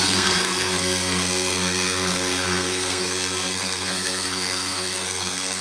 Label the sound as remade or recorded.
remade